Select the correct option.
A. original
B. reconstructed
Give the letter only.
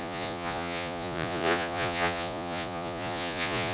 B